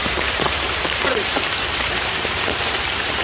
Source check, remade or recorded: remade